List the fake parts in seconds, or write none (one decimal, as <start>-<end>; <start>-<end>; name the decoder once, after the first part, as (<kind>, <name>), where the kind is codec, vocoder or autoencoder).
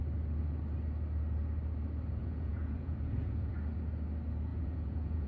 2.2-3.5 (vocoder, Vocos); 4.5-5.3